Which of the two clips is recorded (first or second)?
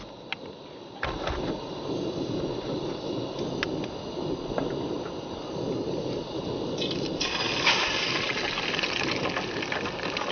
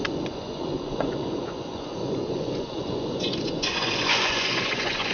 first